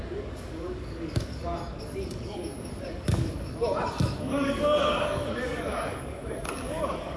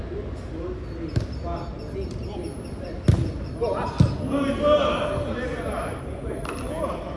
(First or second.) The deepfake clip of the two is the first